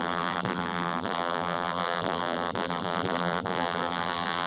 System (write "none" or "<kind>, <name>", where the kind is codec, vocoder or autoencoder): vocoder, BigVGAN v2